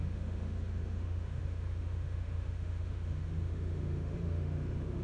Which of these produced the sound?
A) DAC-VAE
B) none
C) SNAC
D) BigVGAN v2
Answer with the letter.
A